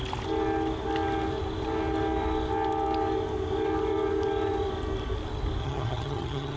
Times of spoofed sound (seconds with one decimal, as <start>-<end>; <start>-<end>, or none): 5.6-6.6